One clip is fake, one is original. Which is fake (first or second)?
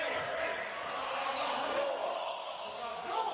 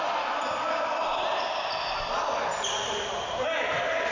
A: first